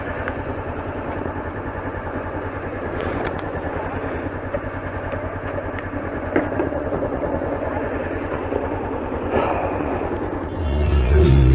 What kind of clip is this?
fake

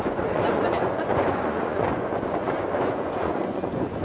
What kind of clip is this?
fake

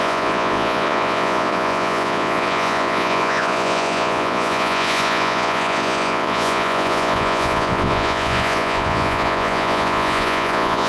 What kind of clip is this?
fake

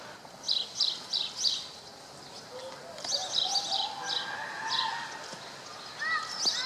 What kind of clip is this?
real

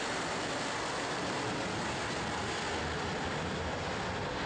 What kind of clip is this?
real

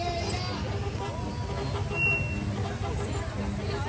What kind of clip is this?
real